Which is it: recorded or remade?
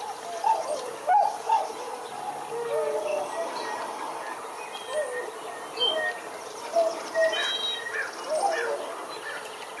recorded